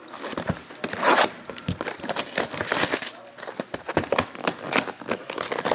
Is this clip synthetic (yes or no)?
no